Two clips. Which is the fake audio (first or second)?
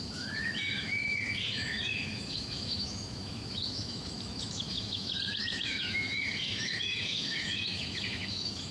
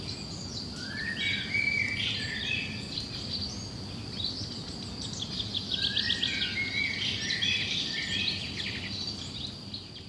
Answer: first